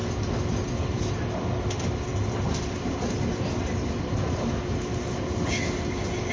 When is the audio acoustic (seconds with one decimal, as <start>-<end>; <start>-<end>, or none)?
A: 0.0-6.3